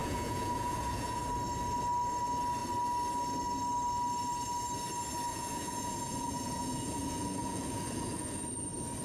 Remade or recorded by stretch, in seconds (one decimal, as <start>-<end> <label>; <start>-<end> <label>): 0.0-1.2 remade; 1.2-5.3 recorded; 5.3-8.4 remade; 8.4-9.0 recorded